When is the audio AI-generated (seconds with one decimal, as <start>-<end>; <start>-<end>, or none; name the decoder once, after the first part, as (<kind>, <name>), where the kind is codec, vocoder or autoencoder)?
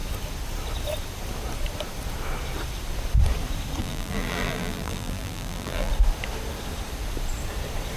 3.8-5.9 (vocoder, BigVGAN v2)